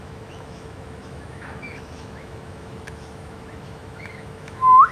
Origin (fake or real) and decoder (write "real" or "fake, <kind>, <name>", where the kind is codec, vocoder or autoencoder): fake, autoencoder, DAC-VAE